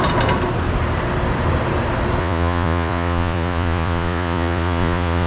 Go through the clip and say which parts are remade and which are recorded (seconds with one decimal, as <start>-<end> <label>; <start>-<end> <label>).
0.0-2.2 recorded; 2.2-5.3 remade